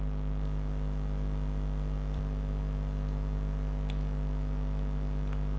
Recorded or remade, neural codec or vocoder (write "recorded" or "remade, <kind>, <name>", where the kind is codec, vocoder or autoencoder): recorded